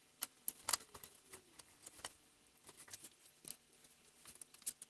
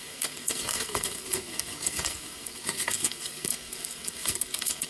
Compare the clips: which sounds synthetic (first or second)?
second